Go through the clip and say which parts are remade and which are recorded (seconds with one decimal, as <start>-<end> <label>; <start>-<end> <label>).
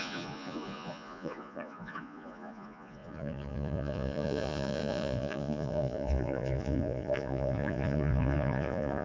0.0-9.0 remade